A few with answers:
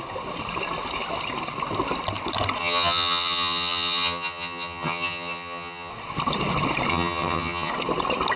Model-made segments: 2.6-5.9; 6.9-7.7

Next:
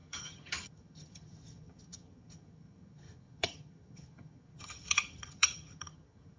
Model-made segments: 0.0-6.4

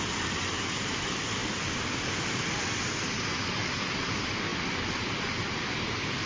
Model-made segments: none